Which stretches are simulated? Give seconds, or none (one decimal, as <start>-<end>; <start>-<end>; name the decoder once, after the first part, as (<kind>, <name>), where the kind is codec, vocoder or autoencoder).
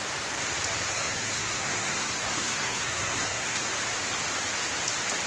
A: 0.9-3.7 (codec, SNAC)